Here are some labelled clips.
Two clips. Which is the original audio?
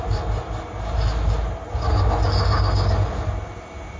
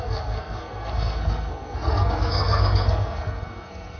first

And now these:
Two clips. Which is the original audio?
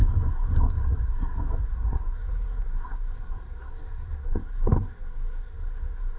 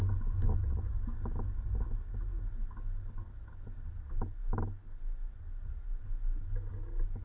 second